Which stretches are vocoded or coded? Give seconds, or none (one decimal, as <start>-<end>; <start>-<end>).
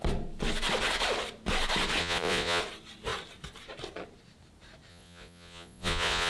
2.0-2.6; 4.9-6.3